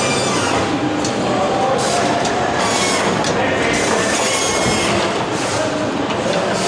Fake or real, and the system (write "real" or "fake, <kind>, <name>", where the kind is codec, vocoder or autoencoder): real